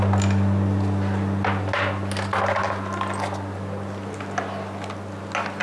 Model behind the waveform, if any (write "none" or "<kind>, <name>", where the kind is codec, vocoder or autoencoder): none